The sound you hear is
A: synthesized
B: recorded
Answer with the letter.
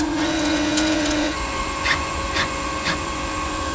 A